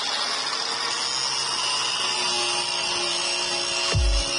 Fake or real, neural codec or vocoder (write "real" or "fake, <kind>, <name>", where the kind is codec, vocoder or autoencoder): real